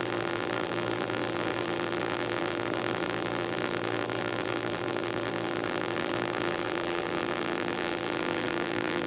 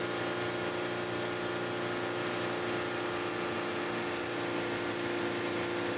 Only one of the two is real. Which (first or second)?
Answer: second